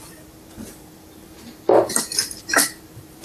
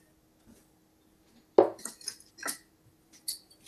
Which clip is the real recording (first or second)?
second